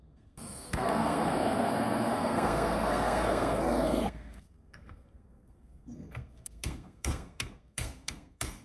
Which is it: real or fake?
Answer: fake